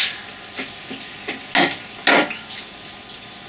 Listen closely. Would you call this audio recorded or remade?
recorded